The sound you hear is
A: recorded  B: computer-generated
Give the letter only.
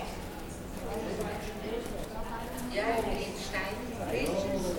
B